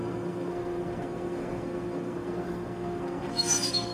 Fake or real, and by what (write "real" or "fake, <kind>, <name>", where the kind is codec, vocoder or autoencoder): fake, codec, SNAC